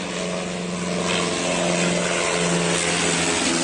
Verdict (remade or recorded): recorded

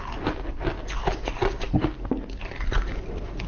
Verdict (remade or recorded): recorded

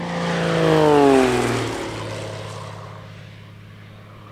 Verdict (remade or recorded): recorded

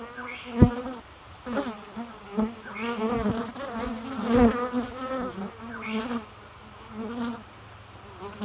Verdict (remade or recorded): recorded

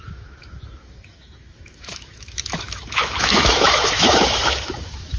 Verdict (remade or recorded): remade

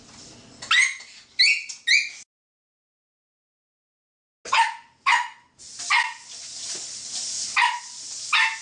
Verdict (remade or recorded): recorded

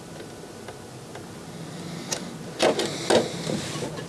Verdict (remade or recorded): recorded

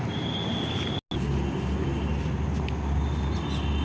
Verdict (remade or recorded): recorded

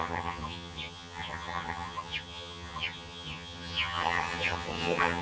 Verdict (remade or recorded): remade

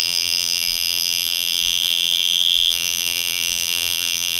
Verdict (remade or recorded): remade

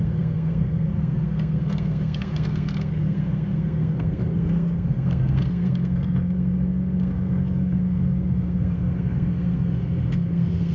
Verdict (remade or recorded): remade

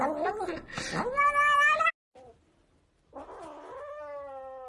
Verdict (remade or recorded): recorded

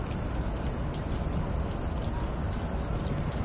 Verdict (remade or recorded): recorded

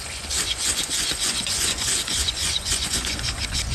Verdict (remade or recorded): remade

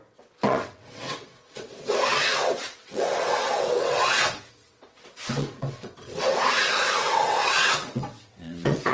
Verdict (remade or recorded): remade